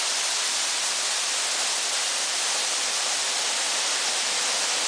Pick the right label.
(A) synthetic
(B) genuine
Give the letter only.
B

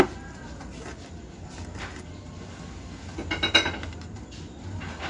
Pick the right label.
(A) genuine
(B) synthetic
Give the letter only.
A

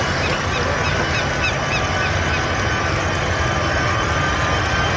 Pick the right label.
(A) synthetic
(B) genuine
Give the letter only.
B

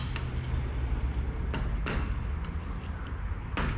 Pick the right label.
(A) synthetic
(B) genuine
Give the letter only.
B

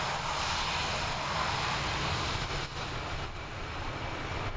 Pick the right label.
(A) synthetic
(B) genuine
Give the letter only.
B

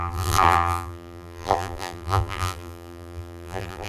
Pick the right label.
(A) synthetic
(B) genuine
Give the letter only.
A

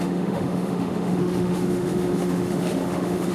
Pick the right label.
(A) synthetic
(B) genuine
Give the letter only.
A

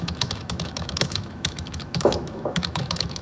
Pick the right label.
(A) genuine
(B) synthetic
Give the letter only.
B